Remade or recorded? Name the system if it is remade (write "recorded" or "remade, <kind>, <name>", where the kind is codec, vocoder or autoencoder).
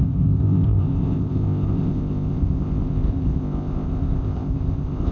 remade, codec, ZipCodec